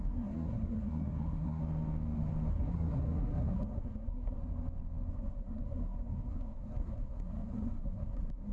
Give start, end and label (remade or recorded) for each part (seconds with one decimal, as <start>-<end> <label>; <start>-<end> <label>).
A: 0.0-1.6 remade; 1.6-2.5 recorded; 2.5-4.4 remade; 4.4-5.1 recorded; 5.1-8.5 remade